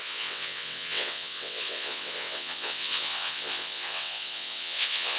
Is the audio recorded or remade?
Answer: remade